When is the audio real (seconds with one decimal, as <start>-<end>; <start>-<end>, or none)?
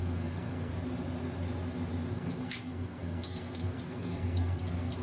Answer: 0.7-2.1